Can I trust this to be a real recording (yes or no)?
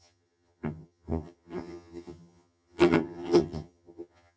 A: no